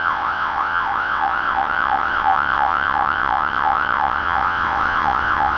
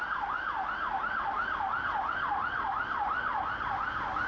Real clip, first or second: second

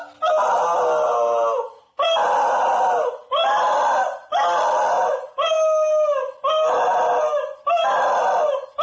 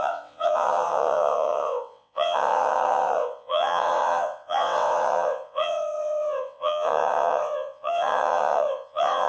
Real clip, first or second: first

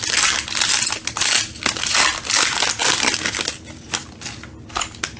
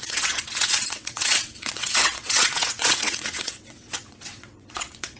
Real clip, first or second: first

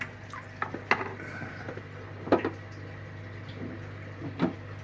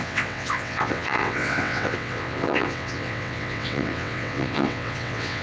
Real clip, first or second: first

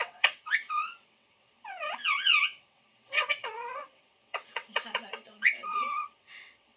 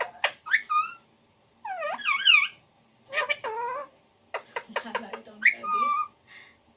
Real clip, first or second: second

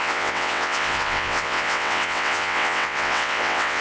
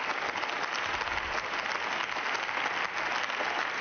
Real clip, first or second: second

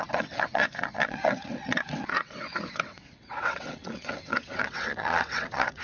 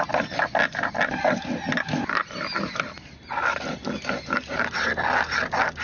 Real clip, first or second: second